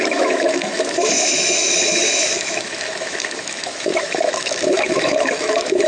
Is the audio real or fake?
fake